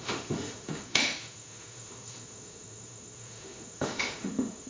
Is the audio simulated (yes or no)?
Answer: yes